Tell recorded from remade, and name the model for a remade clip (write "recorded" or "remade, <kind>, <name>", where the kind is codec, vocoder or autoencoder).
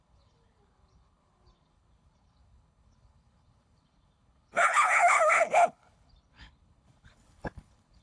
remade, codec, HILCodec